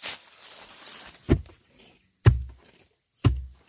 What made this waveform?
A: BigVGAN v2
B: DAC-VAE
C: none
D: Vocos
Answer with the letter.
C